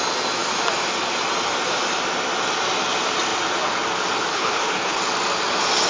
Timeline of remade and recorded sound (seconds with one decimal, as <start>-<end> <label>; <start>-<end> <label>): 0.0-4.3 recorded; 4.3-5.0 remade; 5.0-5.9 recorded